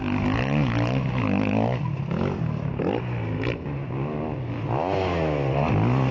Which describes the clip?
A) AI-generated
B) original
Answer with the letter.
B